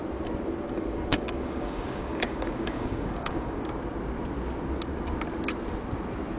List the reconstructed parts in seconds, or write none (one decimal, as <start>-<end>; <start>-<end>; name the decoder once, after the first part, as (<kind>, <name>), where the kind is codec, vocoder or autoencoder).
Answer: 1.1-3.6 (codec, DAC)